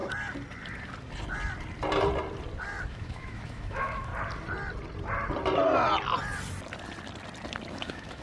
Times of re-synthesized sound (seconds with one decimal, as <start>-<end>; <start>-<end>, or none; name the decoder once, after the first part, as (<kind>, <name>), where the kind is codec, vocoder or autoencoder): 2.9-4.1 (autoencoder, DAC-VAE); 7.7-8.2